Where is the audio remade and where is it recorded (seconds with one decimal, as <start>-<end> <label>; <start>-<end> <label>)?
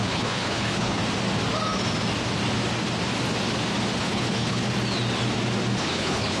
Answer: 0.0-1.0 remade; 1.0-4.0 recorded; 4.0-4.6 remade; 4.6-5.8 recorded; 5.8-6.4 remade